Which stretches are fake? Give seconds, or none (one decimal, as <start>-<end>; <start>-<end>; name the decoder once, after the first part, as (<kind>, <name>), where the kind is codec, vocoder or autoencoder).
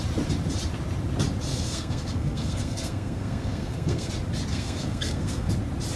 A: 1.5-4.1 (codec, SNAC); 4.5-5.5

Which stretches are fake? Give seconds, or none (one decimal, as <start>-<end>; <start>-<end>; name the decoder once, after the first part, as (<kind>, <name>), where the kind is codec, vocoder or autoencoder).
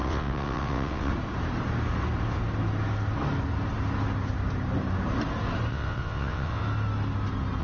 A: 0.0-1.1 (vocoder, WaveNeXt); 5.7-6.6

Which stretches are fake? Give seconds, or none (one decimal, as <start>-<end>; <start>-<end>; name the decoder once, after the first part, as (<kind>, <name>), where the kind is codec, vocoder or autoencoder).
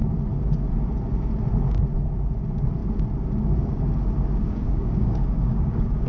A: 4.4-6.1 (codec, DAC)